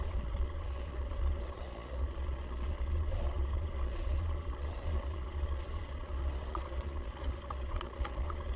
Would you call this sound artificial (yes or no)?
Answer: yes